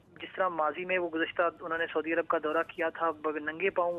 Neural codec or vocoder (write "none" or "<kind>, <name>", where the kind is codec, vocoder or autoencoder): none